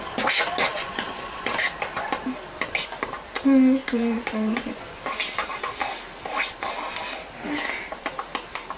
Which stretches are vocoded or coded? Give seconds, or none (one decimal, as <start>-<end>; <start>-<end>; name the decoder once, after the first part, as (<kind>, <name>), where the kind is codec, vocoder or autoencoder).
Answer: 0.7-1.5 (vocoder, Vocos); 3.8-5.0